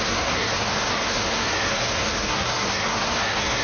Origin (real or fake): fake